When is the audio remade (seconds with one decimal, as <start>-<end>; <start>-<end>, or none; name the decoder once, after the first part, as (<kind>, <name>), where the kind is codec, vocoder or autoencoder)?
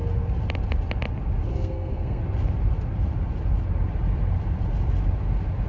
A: 1.5-2.2 (codec, SNAC)